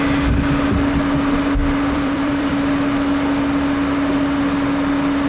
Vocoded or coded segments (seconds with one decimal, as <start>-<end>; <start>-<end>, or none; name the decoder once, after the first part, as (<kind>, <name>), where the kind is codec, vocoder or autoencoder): 1.6-2.5 (vocoder, BigVGAN v2)